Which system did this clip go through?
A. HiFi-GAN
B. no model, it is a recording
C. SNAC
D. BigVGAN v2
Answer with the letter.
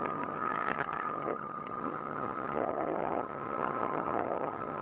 A